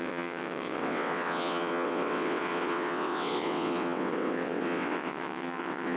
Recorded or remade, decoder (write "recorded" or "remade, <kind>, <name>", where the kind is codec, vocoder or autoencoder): remade, vocoder, WaveNeXt